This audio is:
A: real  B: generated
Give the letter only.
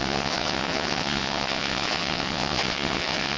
B